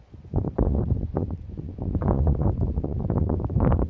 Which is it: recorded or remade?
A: remade